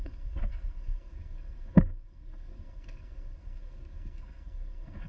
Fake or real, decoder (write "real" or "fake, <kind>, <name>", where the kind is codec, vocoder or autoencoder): fake, codec, SNAC